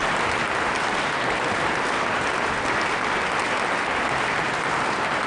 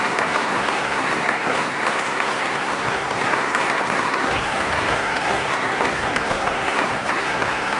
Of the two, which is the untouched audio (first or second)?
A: first